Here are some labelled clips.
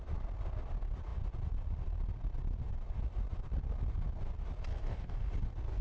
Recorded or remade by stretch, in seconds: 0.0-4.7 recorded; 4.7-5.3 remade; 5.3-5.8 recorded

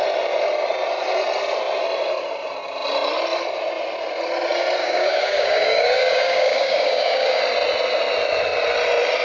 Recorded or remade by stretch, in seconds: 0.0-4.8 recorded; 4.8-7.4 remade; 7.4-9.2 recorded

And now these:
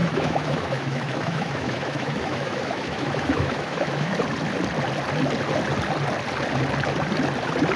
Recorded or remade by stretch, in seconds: 0.0-4.2 remade; 4.2-7.8 recorded

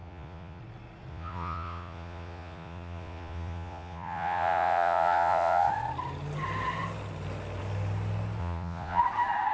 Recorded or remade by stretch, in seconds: 0.0-0.6 remade; 0.6-1.1 recorded; 1.1-5.7 remade; 5.7-8.4 recorded; 8.4-9.0 remade; 9.0-9.5 recorded

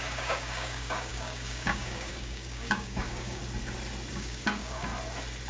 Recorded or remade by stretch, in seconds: 0.0-3.4 remade; 3.4-4.1 recorded; 4.1-4.9 remade; 4.9-5.5 recorded

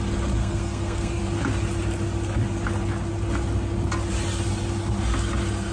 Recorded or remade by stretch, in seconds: 0.0-0.4 recorded; 0.4-1.2 remade; 1.2-5.7 recorded

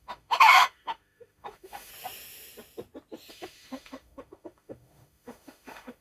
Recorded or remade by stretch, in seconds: 0.0-1.9 remade; 1.9-3.3 recorded; 3.3-6.0 remade

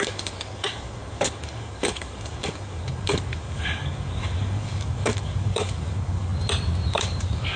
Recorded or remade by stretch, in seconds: 0.0-6.3 remade; 6.3-6.9 recorded; 6.9-7.6 remade